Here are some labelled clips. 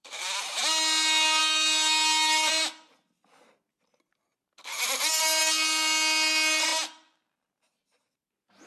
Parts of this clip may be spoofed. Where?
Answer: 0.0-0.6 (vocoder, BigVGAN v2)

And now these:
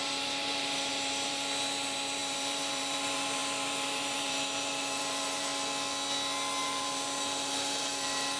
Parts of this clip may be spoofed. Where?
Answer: 0.0-5.5 (vocoder, BigVGAN v2); 6.6-8.4

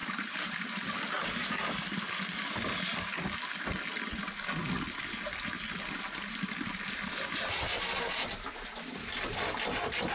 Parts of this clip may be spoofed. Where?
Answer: 0.0-0.6 (vocoder, BigVGAN v2)

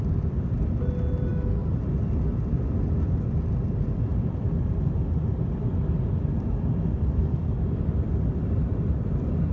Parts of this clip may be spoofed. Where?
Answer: 4.1-9.5 (vocoder, BigVGAN v2)